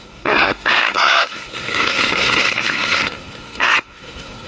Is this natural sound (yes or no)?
no